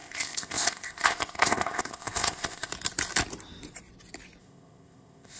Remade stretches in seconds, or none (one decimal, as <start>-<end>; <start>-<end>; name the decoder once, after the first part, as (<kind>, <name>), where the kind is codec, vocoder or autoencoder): 0.0-2.7 (codec, ZipCodec); 4.4-5.4